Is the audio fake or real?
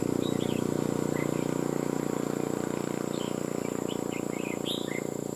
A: real